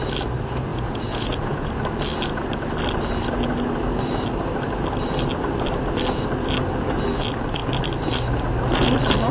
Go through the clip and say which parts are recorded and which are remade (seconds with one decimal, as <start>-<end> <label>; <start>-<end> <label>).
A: 0.0-0.7 recorded; 0.7-1.7 remade; 1.7-9.3 recorded